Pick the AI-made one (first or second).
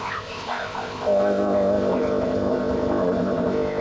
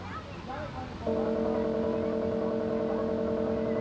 first